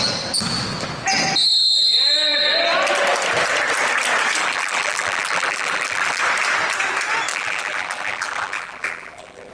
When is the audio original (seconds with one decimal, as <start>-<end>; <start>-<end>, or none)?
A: 0.0-4.4; 6.2-7.3